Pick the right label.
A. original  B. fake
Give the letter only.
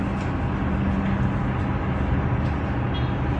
A